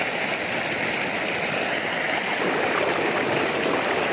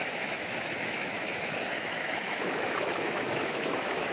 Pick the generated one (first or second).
second